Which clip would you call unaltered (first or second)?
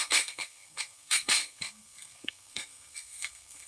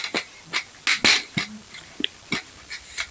second